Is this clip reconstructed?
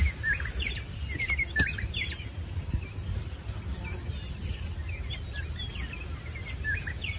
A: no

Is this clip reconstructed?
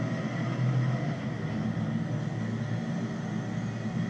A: no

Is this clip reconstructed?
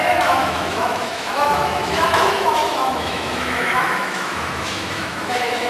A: yes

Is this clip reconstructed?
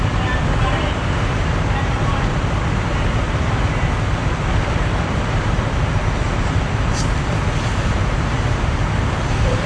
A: yes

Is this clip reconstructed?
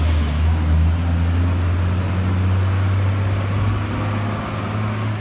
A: no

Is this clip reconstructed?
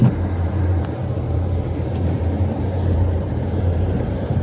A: yes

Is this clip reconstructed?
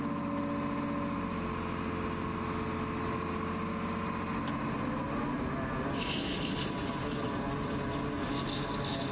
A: no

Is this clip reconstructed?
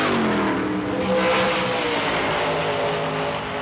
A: no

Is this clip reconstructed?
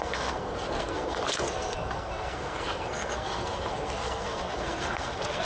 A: yes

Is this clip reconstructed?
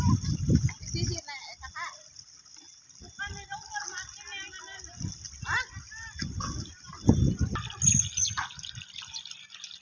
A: no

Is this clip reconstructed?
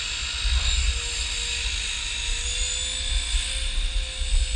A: no